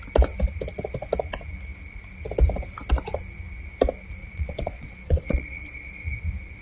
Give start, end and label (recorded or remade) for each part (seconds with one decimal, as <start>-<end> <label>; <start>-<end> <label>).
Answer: 0.0-4.2 recorded; 4.2-6.1 remade; 6.1-6.6 recorded